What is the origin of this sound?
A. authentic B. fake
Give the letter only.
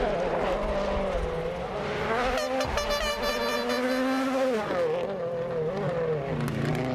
A